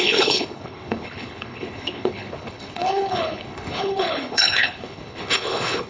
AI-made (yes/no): yes